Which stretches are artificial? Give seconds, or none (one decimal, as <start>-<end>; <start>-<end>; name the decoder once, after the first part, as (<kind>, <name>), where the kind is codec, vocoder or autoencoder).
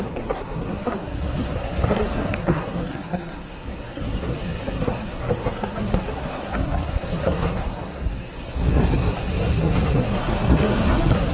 0.0-11.3 (codec, SNAC)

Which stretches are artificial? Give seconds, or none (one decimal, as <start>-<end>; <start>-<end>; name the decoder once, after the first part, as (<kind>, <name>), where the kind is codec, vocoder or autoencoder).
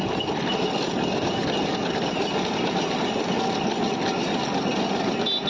none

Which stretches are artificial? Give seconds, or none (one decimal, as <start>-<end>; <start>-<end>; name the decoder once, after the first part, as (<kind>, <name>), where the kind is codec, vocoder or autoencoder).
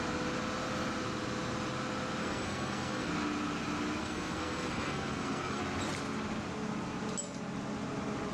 2.2-3.1 (codec, SNAC); 4.0-5.6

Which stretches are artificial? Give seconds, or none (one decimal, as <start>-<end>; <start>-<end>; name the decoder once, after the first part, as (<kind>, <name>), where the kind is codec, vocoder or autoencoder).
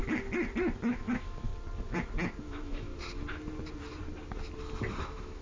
0.9-1.5 (autoencoder, DAC-VAE); 2.4-2.9; 5.0-5.4